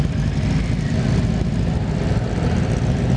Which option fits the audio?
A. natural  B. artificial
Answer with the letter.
A